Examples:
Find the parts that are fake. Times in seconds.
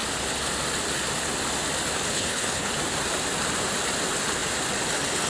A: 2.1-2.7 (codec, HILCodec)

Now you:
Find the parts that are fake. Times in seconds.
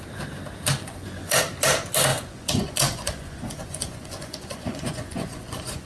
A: 0.8-1.4 (vocoder, Vocos); 2.1-5.9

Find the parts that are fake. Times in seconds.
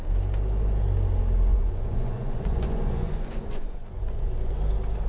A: 1.5-4.6 (vocoder, Vocos)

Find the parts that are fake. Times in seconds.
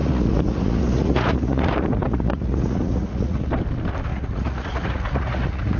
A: 0.0-3.5 (vocoder, Vocos); 4.1-5.8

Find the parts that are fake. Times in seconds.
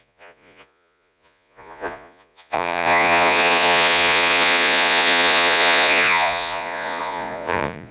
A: 0.0-7.9 (vocoder, Vocos)